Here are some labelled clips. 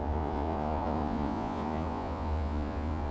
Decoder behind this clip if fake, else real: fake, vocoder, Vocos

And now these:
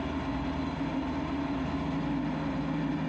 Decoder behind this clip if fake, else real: real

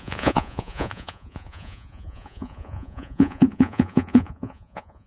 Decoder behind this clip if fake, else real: fake, vocoder, Vocos